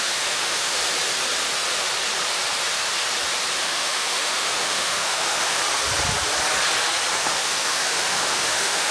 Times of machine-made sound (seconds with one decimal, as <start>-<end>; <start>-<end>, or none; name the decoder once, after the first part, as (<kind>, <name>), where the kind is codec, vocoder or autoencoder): 0.0-0.8 (autoencoder, DAC-VAE); 3.6-5.6; 7.2-8.9